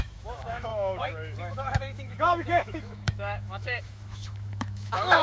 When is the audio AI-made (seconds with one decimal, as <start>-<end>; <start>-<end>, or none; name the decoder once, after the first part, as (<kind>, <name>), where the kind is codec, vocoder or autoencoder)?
0.0-5.2 (autoencoder, DAC-VAE)